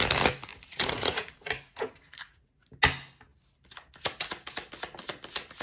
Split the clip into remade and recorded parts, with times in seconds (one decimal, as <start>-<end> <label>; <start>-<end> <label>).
0.0-0.5 recorded; 0.5-2.5 remade; 2.5-5.6 recorded